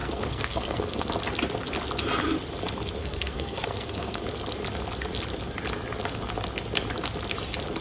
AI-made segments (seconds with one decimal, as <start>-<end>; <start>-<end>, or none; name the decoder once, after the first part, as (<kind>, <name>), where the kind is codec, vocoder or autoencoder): 0.0-1.1 (codec, SNAC); 3.0-4.2